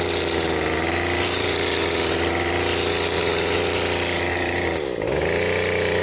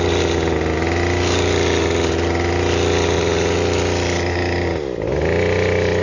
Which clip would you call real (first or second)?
second